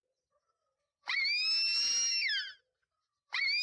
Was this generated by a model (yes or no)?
no